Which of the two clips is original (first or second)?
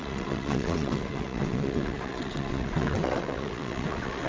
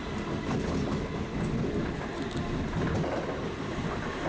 second